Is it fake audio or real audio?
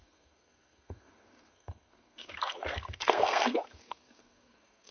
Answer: fake